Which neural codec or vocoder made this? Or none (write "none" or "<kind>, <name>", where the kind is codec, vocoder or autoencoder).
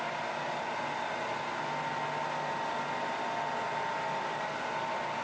none